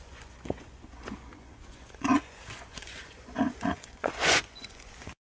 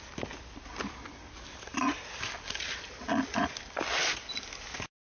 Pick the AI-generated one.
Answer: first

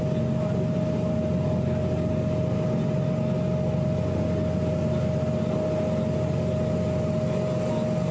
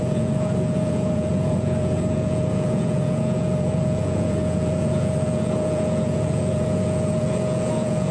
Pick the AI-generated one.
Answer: second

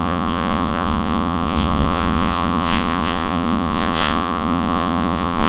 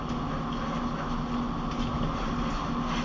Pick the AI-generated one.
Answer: first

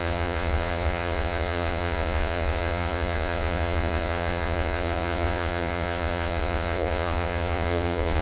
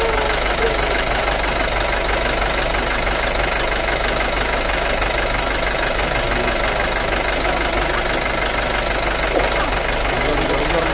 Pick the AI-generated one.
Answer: first